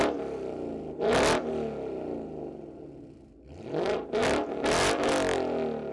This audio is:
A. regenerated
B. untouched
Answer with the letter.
B